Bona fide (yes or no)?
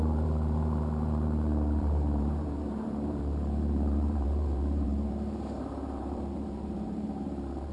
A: no